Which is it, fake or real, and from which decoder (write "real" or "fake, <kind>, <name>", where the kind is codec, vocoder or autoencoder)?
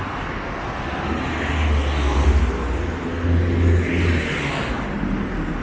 real